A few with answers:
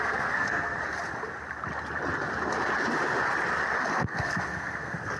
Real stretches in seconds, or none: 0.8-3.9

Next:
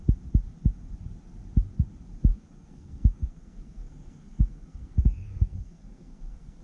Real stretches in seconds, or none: 0.0-2.3

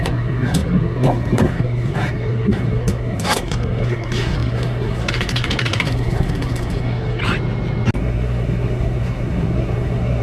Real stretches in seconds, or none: 7.2-8.0

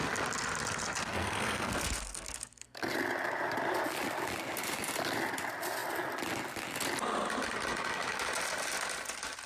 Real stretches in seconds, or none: 0.0-1.0; 2.9-9.5

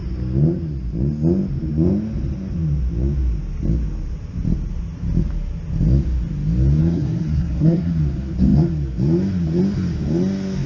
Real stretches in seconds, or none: 0.0-6.8; 8.0-10.7

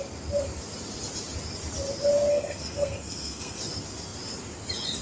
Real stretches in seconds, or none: 0.0-2.3; 3.6-5.0